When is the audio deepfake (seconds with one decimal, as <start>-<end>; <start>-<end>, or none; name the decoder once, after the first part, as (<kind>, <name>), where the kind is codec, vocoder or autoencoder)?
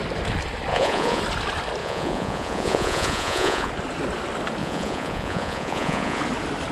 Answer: 0.7-1.2 (vocoder, Vocos); 1.8-3.7; 4.6-6.2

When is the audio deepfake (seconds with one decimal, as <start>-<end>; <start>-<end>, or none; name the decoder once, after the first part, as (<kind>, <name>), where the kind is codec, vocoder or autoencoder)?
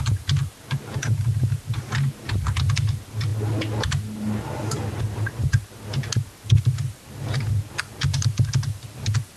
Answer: none